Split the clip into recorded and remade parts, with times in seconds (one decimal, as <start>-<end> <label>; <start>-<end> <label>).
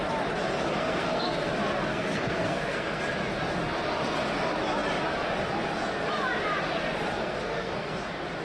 0.0-0.7 recorded; 0.7-1.5 remade; 1.5-1.9 recorded; 1.9-3.0 remade; 3.0-7.2 recorded; 7.2-8.0 remade; 8.0-8.4 recorded